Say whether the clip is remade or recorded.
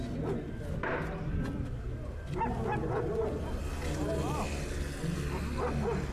recorded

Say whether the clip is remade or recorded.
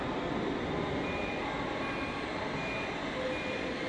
recorded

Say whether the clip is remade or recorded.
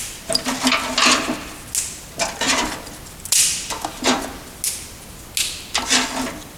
recorded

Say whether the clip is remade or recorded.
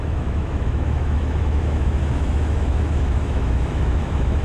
remade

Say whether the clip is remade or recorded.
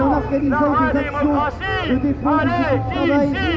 recorded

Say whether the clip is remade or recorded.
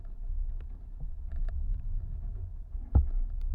recorded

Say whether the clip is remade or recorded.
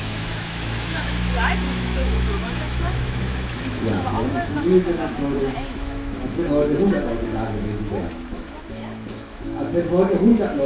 remade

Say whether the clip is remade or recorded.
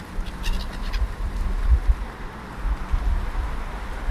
recorded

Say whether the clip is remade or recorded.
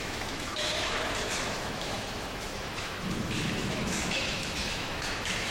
remade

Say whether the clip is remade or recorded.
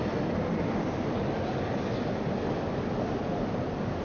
recorded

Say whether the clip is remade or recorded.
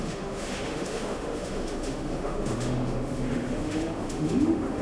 remade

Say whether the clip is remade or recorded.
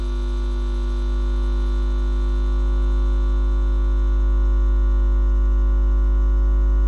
recorded